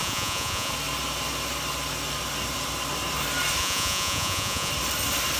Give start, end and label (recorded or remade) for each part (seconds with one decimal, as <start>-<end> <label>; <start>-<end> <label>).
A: 0.0-0.7 remade; 0.7-3.6 recorded; 3.6-4.7 remade; 4.7-5.4 recorded